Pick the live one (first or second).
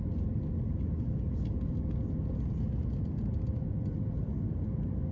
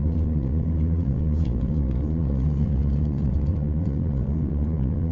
first